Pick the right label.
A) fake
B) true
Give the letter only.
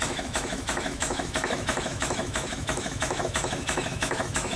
A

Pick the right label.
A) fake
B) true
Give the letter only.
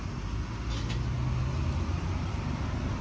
B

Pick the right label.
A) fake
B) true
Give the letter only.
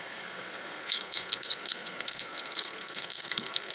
A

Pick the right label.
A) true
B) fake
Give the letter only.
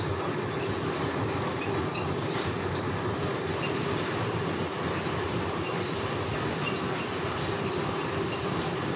A